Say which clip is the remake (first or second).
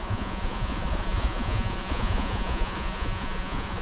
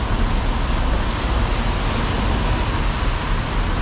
first